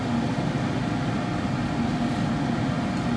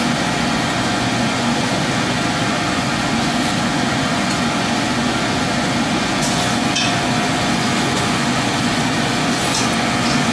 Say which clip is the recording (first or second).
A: first